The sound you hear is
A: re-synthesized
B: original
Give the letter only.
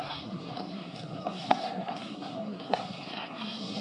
A